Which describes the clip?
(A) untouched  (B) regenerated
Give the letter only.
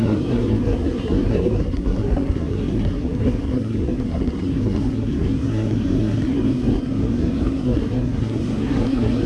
B